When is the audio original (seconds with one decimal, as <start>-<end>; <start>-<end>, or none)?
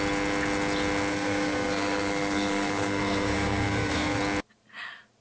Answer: 0.0-1.1; 4.2-5.2